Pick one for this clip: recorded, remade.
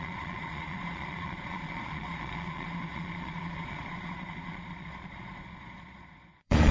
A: remade